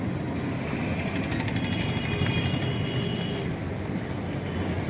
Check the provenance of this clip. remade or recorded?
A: recorded